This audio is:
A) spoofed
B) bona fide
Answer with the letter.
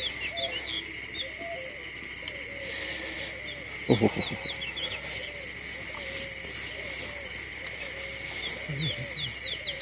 B